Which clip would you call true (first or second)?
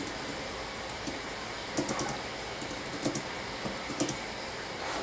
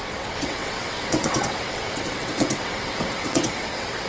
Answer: first